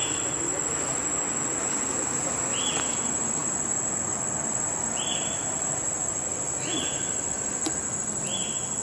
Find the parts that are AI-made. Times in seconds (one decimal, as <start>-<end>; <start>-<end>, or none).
none